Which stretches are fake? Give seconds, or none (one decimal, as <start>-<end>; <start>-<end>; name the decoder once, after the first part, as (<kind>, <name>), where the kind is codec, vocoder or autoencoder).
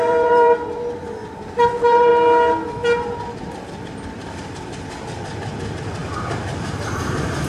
0.0-2.1 (vocoder, BigVGAN v2); 3.6-6.0; 6.6-7.5